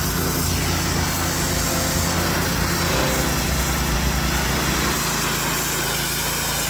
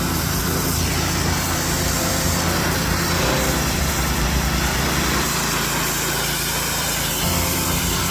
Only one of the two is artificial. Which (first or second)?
second